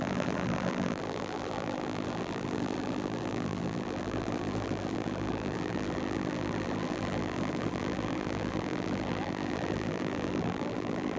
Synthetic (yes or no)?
yes